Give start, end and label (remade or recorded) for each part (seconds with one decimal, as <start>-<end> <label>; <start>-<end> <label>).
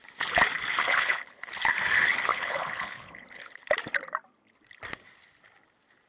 0.0-0.8 recorded; 0.8-1.5 remade; 1.5-2.3 recorded; 2.3-3.6 remade; 3.6-6.1 recorded